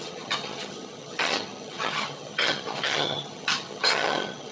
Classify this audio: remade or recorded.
remade